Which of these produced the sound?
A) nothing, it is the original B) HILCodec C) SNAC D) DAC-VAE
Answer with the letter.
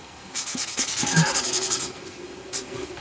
C